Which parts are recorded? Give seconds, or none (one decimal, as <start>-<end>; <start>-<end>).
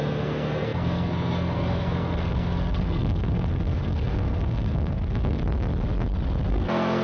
5.4-6.5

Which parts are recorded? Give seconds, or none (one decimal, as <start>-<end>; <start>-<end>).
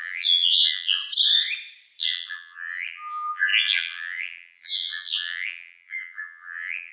1.0-2.0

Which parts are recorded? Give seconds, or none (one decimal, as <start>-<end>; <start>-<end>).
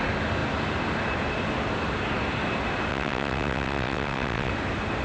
0.0-2.9; 4.5-5.0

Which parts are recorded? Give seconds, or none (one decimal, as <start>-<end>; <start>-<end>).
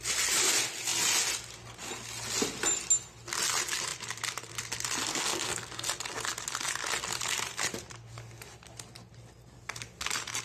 0.0-5.1; 5.7-10.4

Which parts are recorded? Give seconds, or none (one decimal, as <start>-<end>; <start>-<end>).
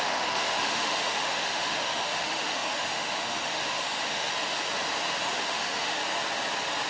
4.3-5.3; 6.0-6.9